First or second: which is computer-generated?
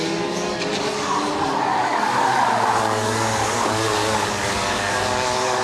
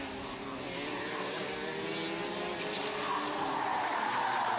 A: first